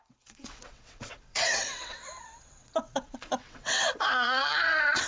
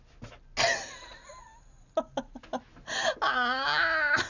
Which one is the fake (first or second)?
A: first